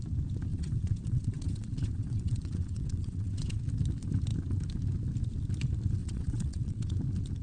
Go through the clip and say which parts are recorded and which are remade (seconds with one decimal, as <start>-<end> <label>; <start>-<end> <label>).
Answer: 0.0-0.5 recorded; 0.5-3.6 remade; 3.6-6.0 recorded; 6.0-6.9 remade; 6.9-7.4 recorded